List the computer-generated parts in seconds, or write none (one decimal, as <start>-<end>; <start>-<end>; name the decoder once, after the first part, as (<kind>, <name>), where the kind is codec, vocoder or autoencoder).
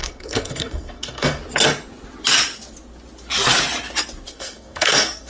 0.0-1.4 (codec, SNAC); 4.3-5.3